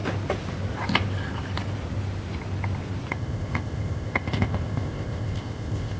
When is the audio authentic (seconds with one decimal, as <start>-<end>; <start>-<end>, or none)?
0.0-3.1